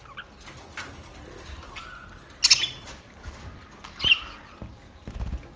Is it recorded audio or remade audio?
recorded